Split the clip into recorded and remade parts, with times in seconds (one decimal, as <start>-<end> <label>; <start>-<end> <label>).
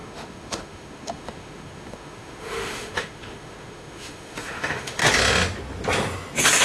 0.0-5.0 remade; 5.0-6.6 recorded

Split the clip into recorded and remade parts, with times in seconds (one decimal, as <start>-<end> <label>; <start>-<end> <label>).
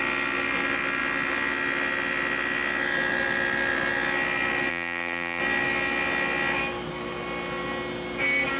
0.0-4.7 recorded; 4.7-5.4 remade; 5.4-8.6 recorded